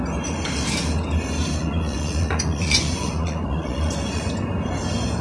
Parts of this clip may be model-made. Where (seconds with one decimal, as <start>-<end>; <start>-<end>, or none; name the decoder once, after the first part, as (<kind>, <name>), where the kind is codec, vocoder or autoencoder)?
1.6-4.5 (vocoder, Vocos)